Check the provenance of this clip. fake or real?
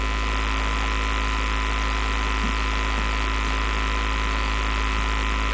real